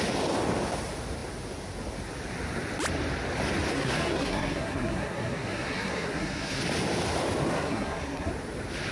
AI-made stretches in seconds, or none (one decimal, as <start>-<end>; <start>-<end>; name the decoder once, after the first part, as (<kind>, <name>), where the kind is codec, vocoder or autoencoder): 3.7-6.6 (codec, SNAC); 7.5-8.3